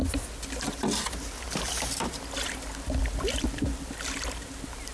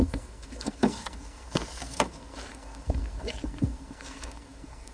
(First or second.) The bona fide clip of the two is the first